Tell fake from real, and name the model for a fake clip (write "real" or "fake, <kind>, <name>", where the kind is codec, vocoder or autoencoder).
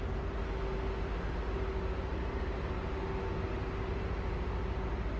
real